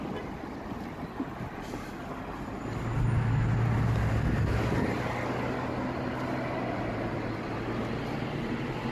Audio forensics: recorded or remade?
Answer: recorded